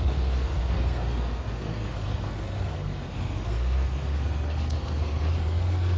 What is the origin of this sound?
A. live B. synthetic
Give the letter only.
B